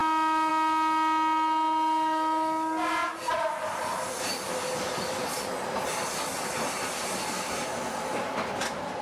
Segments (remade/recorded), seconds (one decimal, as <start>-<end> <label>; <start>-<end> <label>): 0.0-3.0 recorded; 3.0-3.5 remade; 3.5-9.0 recorded